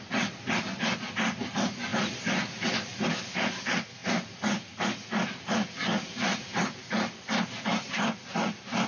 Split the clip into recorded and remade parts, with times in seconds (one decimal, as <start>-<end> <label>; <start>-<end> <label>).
0.0-8.9 recorded